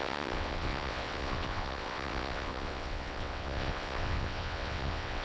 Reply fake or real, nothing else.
fake